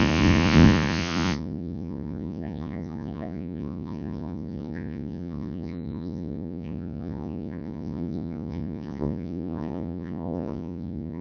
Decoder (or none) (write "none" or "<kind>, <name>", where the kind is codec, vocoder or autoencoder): vocoder, Vocos